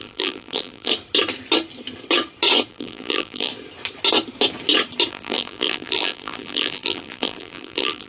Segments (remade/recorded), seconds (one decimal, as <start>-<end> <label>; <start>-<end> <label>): 0.0-0.9 remade; 0.9-2.7 recorded; 2.7-3.5 remade; 3.5-5.1 recorded; 5.1-8.1 remade